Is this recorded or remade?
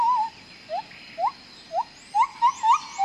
recorded